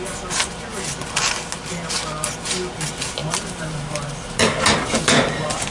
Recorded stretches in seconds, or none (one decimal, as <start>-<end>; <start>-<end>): 0.0-3.2